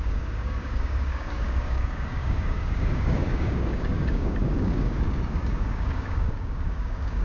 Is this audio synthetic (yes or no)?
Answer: yes